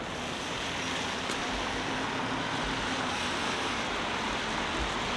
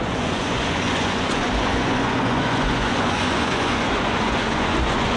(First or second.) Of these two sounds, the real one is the first